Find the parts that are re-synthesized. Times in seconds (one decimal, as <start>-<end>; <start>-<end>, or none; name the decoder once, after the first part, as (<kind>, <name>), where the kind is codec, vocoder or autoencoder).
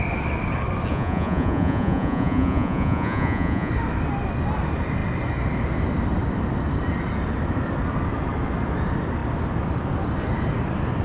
0.9-3.7 (vocoder, Vocos)